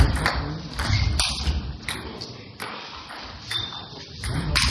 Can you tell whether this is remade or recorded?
remade